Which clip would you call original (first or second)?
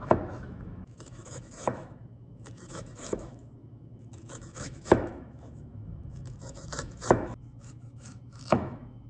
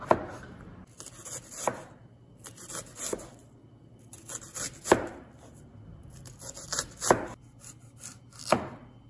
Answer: second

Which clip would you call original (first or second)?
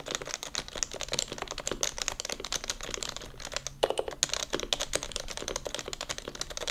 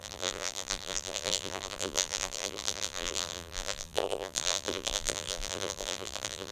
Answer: first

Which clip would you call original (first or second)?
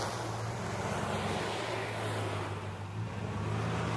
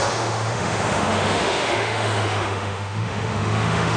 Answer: first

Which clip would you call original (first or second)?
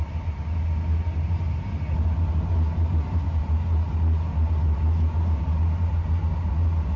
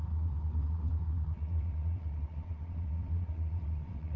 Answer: first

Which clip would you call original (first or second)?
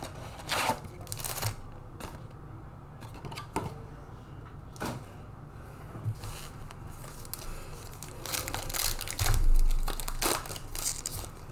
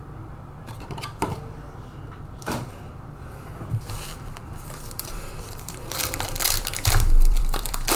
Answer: first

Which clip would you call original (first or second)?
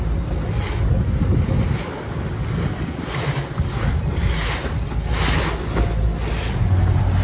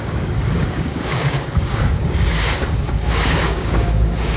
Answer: first